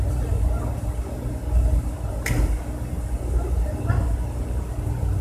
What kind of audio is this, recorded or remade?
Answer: recorded